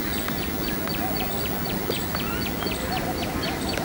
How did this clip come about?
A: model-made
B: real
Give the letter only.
B